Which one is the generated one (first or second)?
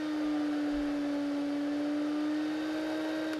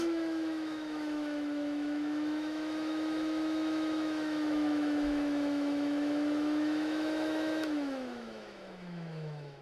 second